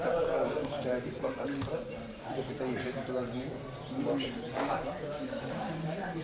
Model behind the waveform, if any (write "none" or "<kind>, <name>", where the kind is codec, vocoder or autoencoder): vocoder, BigVGAN v2